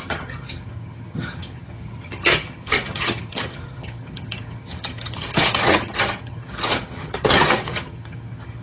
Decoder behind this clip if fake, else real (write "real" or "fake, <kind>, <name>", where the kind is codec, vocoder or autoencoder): fake, vocoder, HiFi-GAN